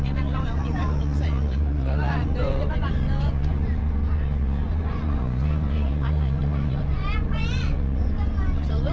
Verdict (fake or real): fake